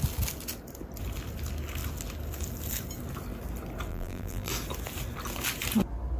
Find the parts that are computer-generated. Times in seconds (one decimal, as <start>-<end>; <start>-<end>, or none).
3.9-4.5